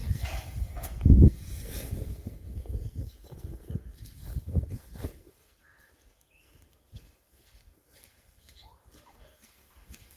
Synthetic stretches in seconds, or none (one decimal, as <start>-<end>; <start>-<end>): 0.0-10.2